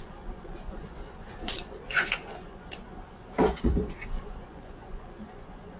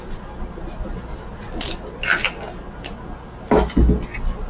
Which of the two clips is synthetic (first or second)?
first